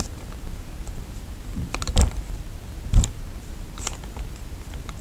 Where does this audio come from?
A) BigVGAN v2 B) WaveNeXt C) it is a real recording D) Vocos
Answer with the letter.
A